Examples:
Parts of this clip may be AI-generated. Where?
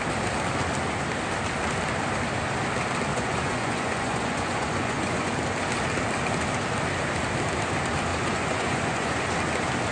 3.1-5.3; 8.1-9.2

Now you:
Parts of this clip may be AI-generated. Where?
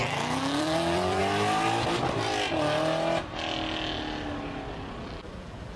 0.0-1.2; 4.7-5.8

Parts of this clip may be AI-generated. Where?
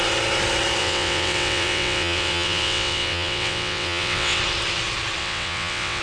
0.8-4.4; 5.2-6.0